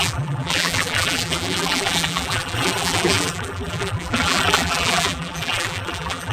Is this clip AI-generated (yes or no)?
yes